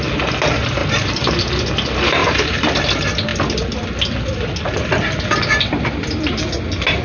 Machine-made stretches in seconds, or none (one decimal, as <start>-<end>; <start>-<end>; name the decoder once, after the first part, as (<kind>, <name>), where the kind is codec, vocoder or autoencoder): 0.8-1.3 (vocoder, BigVGAN v2); 2.2-2.8